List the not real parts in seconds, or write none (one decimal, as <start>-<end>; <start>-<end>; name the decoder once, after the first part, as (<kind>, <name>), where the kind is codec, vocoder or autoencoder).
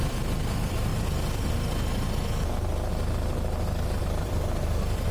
0.0-0.9 (vocoder, BigVGAN v2); 4.0-5.1